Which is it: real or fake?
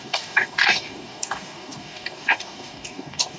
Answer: fake